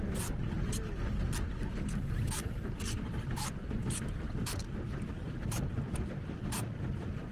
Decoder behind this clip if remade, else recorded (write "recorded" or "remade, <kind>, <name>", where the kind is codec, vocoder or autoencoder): recorded